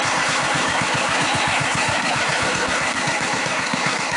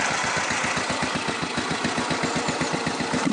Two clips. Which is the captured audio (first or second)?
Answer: second